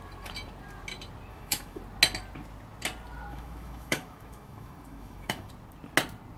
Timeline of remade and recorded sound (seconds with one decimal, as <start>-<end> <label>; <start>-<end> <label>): 0.0-1.3 recorded; 1.3-1.8 remade; 1.8-3.3 recorded; 3.3-5.5 remade; 5.5-6.4 recorded